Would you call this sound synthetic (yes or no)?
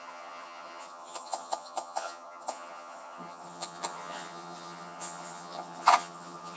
yes